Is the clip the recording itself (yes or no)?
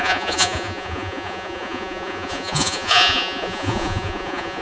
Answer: no